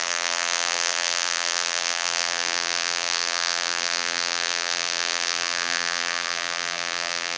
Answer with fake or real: fake